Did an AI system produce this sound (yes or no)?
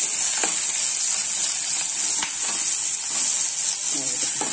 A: no